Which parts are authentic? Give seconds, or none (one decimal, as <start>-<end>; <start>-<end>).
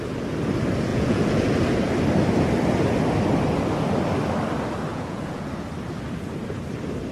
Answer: 0.0-0.9; 1.5-4.9; 5.5-7.1